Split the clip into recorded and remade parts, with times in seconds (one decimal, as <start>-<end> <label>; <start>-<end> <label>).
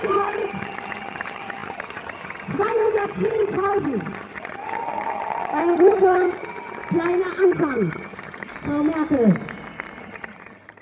0.0-6.8 remade; 6.8-7.3 recorded; 7.3-8.5 remade; 8.5-10.0 recorded; 10.0-10.8 remade